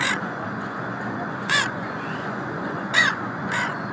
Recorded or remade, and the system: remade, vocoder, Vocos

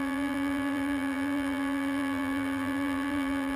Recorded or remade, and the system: remade, vocoder, BigVGAN v2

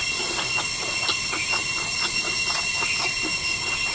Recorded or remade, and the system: recorded